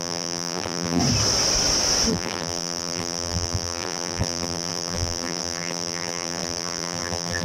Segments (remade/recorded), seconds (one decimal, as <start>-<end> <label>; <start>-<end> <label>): 0.0-1.0 remade; 1.0-2.1 recorded; 2.1-7.4 remade